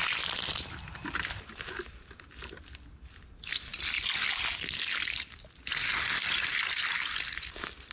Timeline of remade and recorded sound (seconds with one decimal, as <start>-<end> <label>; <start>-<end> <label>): 0.0-7.9 recorded